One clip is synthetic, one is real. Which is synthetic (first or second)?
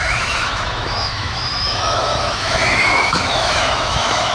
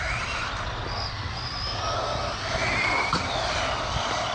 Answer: first